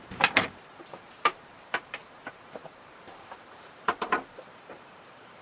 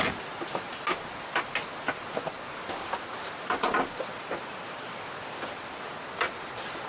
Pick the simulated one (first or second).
first